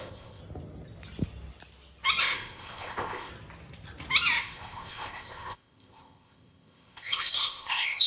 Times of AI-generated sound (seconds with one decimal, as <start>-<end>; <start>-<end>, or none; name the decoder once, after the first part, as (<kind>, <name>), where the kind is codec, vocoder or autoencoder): 0.0-0.4 (codec, ZipCodec); 2.2-3.3; 4.4-8.1